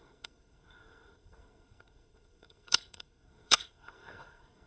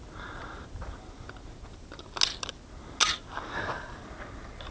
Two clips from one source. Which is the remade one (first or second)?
first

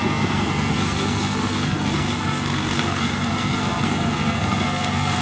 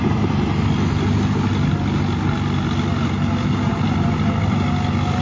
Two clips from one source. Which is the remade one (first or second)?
first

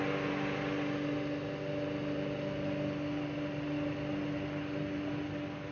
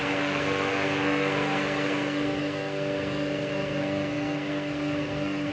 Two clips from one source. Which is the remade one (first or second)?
second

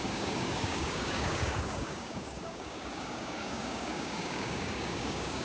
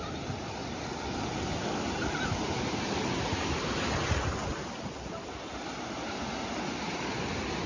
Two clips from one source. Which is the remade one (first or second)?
first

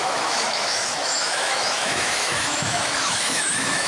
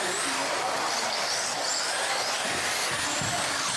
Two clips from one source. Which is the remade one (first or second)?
first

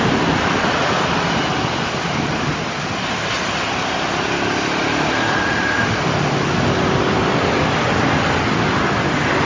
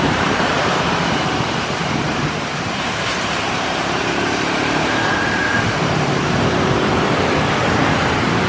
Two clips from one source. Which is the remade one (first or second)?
second